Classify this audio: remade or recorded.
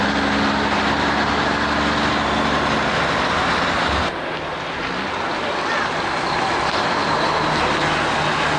recorded